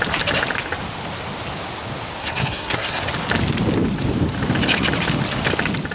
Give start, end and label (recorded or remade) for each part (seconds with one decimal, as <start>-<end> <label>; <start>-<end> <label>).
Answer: 0.0-2.2 recorded; 2.2-3.0 remade; 3.0-5.9 recorded